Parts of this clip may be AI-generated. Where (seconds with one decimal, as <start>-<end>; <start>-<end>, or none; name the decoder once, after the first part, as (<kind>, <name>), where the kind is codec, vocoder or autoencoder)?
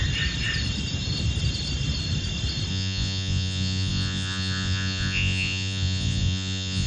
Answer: 2.7-6.9 (vocoder, Vocos)